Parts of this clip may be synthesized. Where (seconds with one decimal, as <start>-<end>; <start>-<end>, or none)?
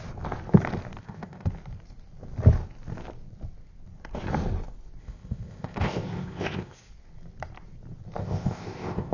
1.0-1.5; 5.0-6.9; 8.2-9.1